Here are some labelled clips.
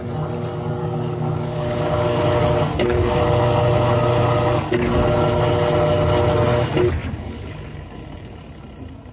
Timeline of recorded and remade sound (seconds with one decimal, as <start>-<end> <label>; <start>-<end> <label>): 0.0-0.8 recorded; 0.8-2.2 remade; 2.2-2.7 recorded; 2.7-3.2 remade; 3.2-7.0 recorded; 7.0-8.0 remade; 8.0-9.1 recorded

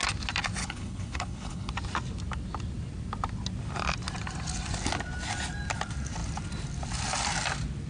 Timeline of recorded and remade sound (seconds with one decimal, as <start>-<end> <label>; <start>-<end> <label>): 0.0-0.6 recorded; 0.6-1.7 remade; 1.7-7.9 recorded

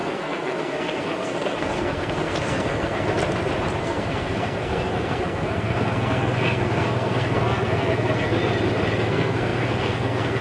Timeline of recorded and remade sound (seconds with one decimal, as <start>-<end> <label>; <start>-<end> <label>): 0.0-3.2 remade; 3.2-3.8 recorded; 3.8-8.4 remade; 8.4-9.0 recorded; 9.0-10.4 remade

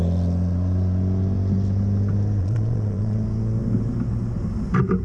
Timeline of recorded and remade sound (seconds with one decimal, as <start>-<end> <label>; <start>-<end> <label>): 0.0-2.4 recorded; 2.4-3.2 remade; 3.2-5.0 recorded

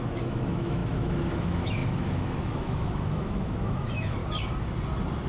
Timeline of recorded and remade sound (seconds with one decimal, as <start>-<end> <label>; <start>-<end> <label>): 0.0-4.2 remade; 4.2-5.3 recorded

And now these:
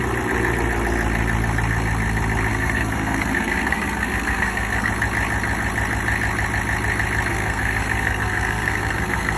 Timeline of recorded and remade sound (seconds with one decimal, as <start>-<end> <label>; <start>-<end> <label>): 0.0-2.5 recorded; 2.5-4.9 remade; 4.9-7.3 recorded; 7.3-9.4 remade

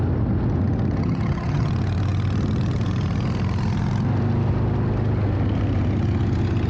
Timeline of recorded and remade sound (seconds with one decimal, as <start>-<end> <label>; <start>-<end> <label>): 0.0-1.0 recorded; 1.0-1.7 remade; 1.7-6.7 recorded